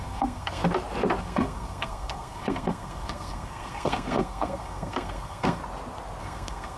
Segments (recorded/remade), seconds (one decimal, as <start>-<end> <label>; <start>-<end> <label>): 0.0-0.6 remade; 0.6-1.2 recorded; 1.2-5.6 remade; 5.6-6.2 recorded; 6.2-6.8 remade